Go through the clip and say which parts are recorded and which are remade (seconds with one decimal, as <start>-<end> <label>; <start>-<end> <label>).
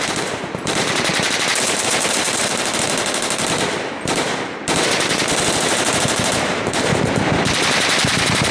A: 0.0-8.5 remade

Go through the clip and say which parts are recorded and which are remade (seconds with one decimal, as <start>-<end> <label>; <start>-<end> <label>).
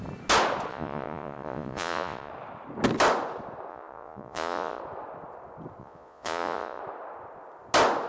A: 0.0-0.7 recorded; 0.7-2.3 remade; 2.3-3.7 recorded; 3.7-4.8 remade; 4.8-5.8 recorded; 5.8-6.8 remade; 6.8-8.1 recorded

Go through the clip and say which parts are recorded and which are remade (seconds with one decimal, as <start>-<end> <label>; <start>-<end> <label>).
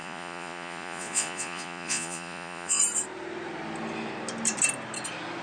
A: 0.0-2.8 remade; 2.8-5.4 recorded